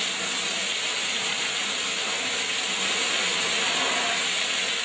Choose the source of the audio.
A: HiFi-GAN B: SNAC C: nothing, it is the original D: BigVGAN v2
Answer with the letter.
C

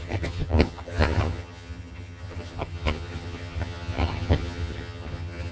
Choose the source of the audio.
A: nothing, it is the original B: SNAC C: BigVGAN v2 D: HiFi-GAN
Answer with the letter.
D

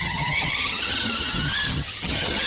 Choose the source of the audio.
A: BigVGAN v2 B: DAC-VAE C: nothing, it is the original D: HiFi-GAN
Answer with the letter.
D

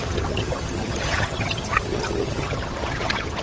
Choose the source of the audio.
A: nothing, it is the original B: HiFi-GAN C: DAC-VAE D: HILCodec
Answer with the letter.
B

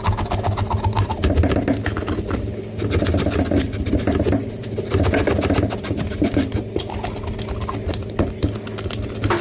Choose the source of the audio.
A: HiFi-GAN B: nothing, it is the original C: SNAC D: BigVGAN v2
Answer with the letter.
B